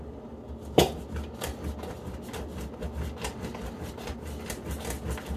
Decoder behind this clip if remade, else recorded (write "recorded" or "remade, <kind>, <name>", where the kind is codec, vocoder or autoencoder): recorded